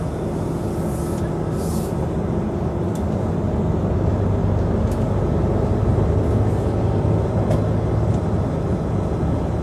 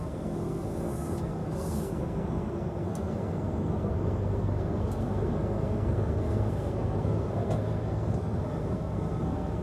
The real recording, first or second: first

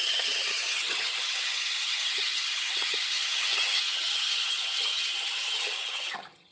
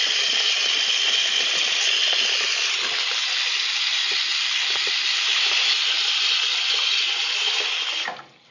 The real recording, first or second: second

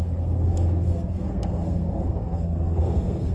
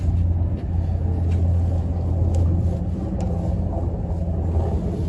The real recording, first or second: second